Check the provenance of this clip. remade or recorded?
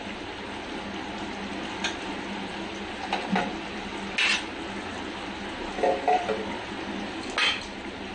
recorded